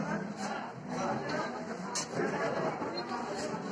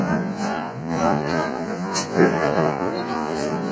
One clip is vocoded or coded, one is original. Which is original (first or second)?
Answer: first